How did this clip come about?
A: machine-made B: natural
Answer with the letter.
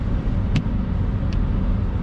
A